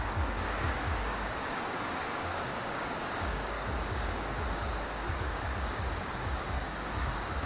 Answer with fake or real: fake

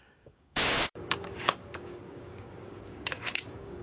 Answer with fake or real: fake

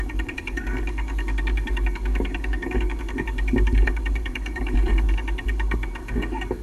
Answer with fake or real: fake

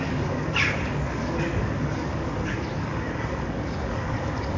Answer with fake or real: fake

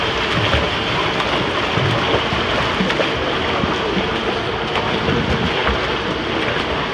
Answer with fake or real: real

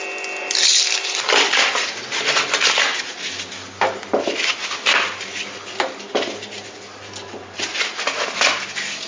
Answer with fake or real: real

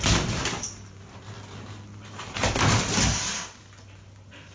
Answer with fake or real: real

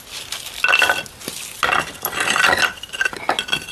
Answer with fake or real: real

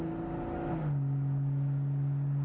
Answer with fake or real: real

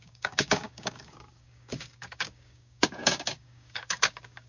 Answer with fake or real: fake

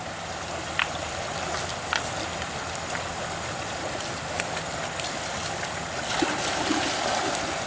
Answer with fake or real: real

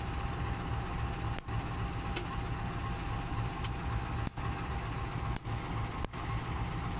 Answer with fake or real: real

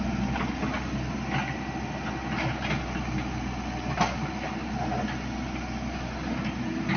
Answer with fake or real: real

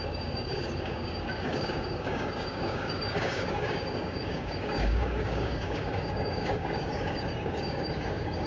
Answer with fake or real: fake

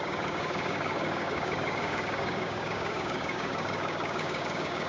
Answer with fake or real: fake